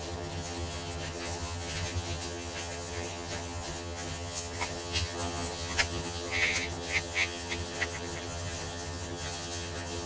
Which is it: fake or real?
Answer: fake